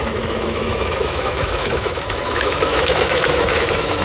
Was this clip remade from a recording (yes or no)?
yes